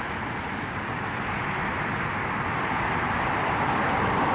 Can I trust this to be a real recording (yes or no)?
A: yes